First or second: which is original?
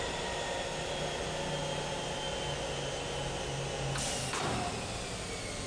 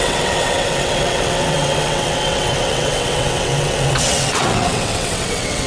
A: first